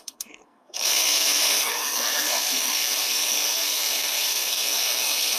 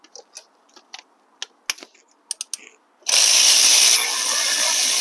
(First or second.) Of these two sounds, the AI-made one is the first